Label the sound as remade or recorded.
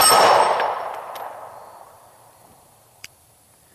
remade